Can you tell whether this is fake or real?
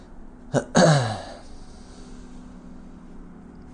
real